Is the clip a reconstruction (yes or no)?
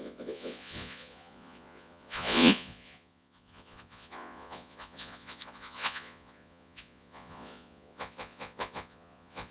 yes